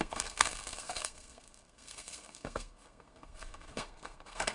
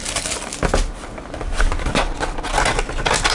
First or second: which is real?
second